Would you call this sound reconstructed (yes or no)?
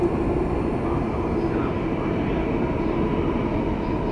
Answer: no